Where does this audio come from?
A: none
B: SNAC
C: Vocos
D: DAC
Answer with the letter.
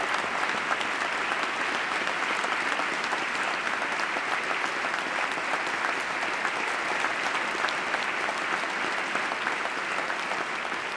A